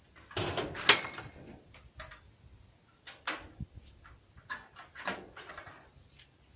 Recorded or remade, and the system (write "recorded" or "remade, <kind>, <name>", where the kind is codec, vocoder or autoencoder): recorded